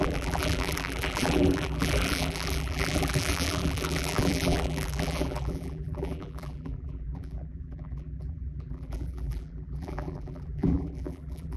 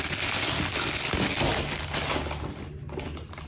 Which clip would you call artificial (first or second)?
first